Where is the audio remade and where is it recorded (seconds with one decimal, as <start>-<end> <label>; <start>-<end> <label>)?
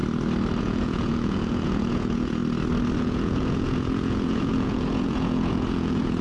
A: 0.0-0.6 recorded; 0.6-2.4 remade; 2.4-3.0 recorded; 3.0-6.2 remade